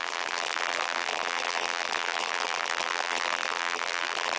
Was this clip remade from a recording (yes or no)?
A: yes